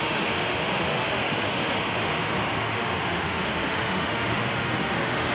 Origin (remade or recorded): remade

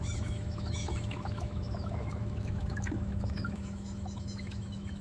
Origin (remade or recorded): remade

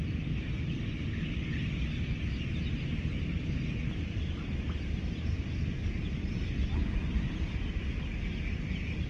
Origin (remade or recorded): recorded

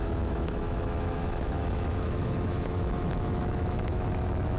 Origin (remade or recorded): remade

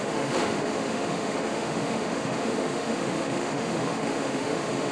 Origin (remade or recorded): remade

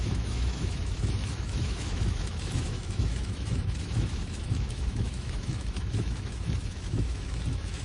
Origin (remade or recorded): remade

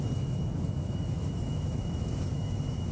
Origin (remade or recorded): remade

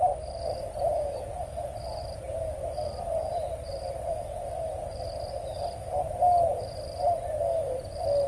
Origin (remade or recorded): recorded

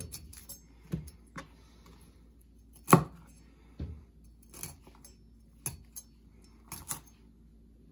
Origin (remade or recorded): recorded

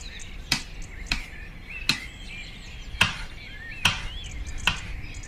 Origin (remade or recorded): recorded